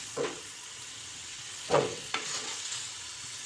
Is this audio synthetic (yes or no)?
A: yes